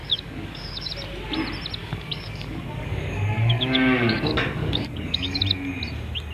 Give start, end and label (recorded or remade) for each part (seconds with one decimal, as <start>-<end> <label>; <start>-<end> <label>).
0.0-0.9 remade; 0.9-1.8 recorded; 1.8-5.4 remade; 5.4-6.3 recorded